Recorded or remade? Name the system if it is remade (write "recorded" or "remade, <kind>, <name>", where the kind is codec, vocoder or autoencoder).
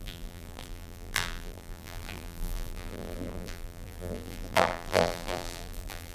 remade, vocoder, BigVGAN v2